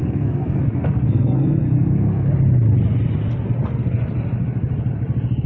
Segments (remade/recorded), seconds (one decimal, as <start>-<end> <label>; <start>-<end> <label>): 0.0-2.3 remade; 2.3-5.5 recorded